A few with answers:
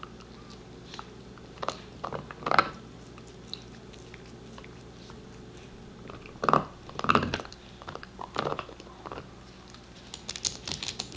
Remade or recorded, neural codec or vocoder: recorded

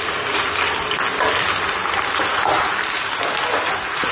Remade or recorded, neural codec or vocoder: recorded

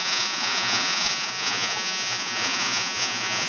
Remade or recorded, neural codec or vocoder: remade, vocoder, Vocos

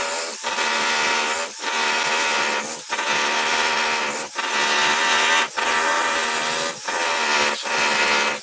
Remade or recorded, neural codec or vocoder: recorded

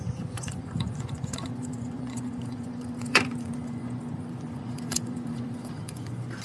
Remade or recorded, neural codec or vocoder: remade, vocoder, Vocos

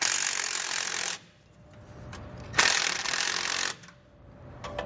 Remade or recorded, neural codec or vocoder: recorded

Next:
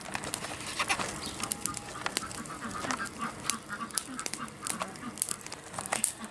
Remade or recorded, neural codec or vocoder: recorded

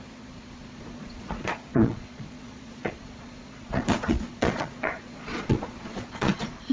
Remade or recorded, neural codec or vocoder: remade, vocoder, Vocos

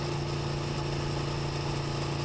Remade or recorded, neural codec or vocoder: recorded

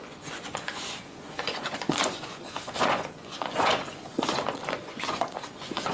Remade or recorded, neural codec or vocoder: remade, vocoder, Vocos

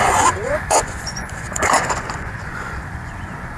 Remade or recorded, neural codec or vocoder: remade, vocoder, Vocos